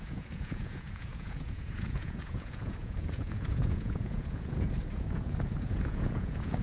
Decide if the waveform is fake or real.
fake